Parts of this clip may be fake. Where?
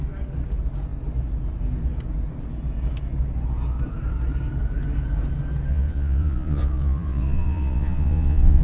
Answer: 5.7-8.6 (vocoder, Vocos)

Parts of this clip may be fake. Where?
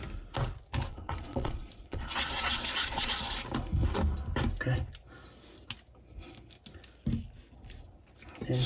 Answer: 0.9-3.3 (vocoder, Vocos)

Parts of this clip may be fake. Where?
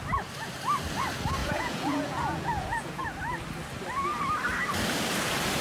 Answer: 1.4-3.0 (vocoder, Vocos)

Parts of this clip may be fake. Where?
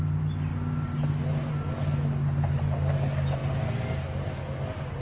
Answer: none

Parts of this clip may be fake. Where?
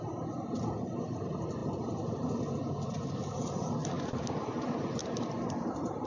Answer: none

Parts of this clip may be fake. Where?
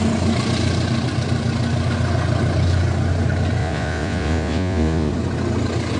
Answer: 3.6-5.1 (vocoder, Vocos)